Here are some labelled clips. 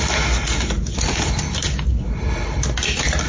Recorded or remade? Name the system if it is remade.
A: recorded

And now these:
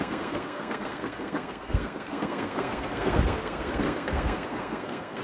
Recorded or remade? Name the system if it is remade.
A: remade, codec, SNAC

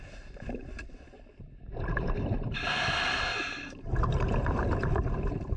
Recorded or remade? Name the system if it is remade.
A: remade, vocoder, BigVGAN v2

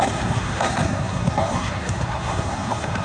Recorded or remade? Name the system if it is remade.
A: remade, codec, SNAC